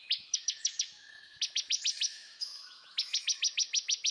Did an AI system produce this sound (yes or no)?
yes